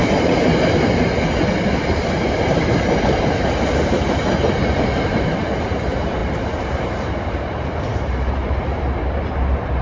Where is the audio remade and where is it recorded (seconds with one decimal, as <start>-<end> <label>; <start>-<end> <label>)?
0.0-9.8 remade